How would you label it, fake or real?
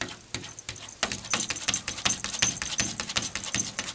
real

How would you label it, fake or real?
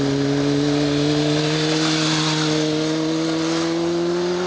real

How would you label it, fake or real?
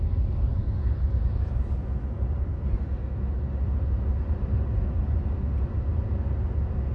real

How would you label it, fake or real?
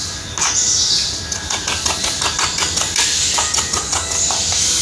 real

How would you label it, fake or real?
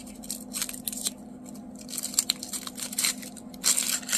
real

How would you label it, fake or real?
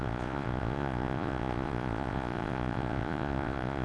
fake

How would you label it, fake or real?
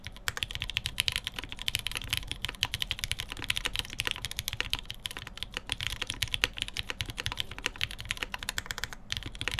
real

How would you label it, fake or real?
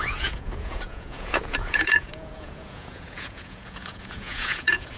fake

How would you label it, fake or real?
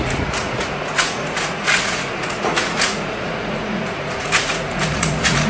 fake